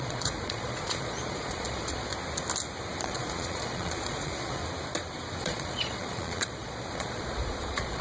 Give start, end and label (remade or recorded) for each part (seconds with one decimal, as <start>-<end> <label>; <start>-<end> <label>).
0.0-2.1 remade; 2.1-3.0 recorded; 3.0-4.6 remade; 4.6-5.4 recorded; 5.4-8.0 remade